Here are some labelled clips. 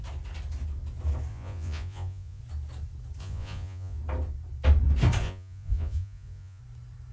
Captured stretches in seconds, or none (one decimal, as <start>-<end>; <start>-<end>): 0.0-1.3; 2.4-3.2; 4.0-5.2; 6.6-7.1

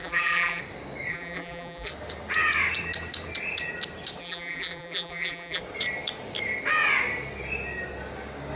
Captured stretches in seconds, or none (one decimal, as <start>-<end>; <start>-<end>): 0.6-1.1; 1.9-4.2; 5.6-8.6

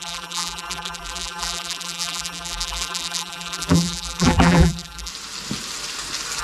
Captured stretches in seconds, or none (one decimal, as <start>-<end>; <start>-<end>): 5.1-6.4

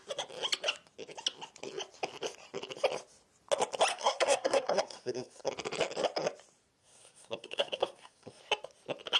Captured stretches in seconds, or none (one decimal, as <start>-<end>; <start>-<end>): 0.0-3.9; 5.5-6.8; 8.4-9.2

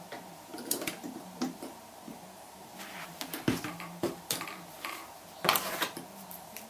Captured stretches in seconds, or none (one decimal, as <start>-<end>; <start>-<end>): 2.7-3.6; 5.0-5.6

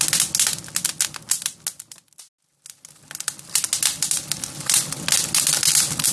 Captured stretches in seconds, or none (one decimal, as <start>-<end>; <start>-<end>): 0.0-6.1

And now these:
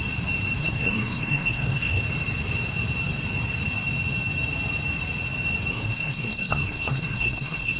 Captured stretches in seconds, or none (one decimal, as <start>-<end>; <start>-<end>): 0.0-0.6; 2.0-5.7

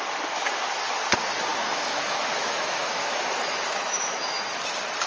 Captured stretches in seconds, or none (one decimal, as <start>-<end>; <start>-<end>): 0.0-1.5; 4.4-5.1